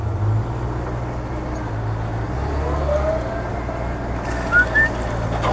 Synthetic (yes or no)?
no